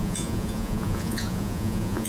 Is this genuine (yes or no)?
no